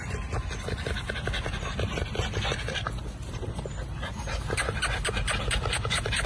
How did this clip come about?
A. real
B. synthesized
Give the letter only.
A